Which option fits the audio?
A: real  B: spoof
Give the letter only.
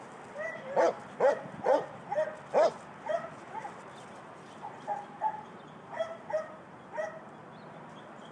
A